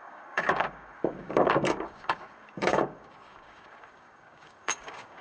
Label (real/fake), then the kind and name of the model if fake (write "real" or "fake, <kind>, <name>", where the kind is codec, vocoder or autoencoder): fake, codec, DAC